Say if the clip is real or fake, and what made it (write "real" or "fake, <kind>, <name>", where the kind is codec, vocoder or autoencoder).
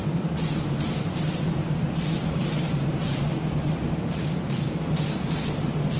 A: fake, vocoder, BigVGAN v2